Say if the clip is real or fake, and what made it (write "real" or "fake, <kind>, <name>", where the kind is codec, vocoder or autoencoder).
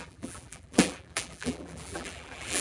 fake, vocoder, BigVGAN v2